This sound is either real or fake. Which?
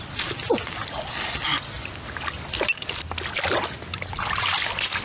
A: real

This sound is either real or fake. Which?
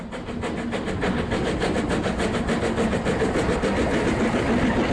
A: real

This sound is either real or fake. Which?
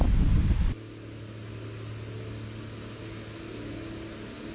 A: real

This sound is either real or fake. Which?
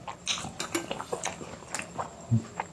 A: real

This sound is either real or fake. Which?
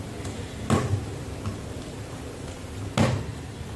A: real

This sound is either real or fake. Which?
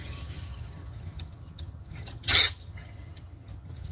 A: fake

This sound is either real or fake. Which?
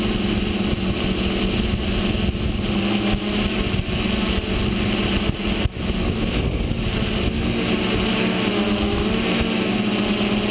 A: real